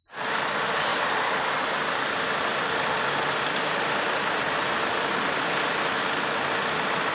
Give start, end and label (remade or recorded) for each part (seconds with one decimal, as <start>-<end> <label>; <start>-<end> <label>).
0.0-7.1 recorded